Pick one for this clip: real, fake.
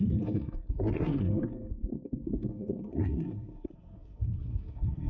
fake